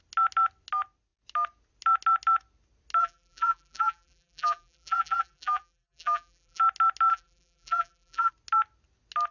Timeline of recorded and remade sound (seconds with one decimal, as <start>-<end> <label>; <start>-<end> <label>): 0.0-3.0 recorded; 3.0-6.6 remade; 6.6-7.1 recorded; 7.1-8.3 remade; 8.3-9.3 recorded